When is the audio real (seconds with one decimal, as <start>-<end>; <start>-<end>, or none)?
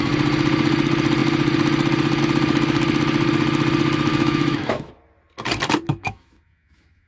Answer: 0.0-4.1; 4.9-5.9